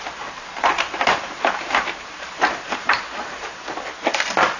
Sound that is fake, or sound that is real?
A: fake